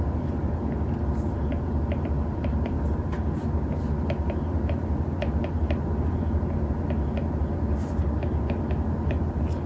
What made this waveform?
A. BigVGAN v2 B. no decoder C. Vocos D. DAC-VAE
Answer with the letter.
B